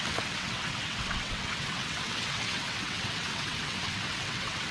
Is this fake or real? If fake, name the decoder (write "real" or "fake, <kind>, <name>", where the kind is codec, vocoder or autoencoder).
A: fake, vocoder, WaveNeXt